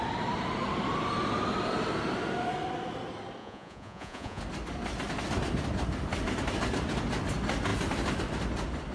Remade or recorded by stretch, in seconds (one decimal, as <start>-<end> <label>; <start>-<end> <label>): 0.0-3.4 recorded; 3.4-4.4 remade; 4.4-8.9 recorded